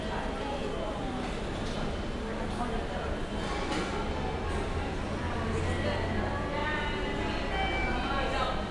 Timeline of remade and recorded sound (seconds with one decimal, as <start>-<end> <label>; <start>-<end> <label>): 0.0-8.7 recorded